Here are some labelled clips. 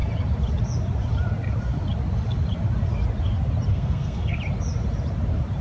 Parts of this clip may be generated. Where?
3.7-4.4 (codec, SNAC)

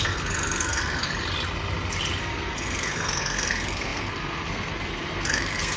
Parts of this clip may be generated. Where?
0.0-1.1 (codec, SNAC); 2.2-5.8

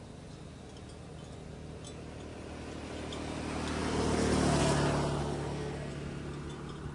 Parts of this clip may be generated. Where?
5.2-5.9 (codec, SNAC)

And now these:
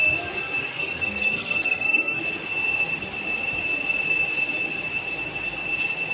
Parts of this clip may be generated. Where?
0.7-2.2 (codec, SNAC)

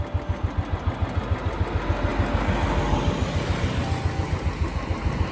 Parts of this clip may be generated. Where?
none